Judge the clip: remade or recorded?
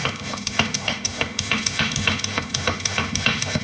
remade